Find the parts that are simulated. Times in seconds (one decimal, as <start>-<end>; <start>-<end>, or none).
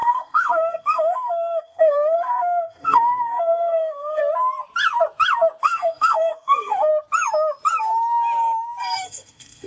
0.0-4.2; 5.6-6.9; 8.8-9.7